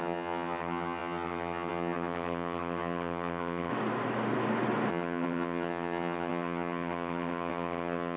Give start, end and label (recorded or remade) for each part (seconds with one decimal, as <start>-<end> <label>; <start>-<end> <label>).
0.0-3.7 remade; 3.7-4.9 recorded; 4.9-8.2 remade